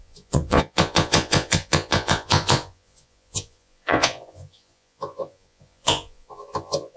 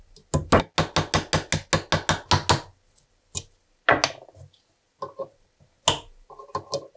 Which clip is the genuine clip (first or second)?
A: second